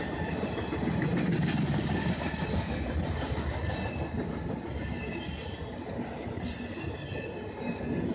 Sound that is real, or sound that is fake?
real